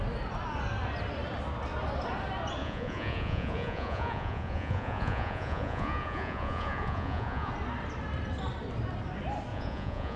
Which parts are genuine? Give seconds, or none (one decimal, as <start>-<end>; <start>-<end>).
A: 0.0-2.6; 7.5-9.5